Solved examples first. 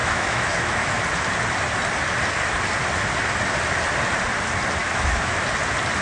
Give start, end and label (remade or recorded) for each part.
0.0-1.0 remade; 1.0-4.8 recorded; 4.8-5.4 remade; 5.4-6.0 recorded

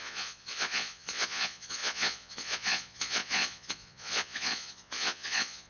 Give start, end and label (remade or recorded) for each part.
0.0-5.7 remade